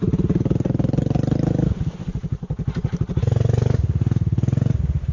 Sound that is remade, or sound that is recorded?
recorded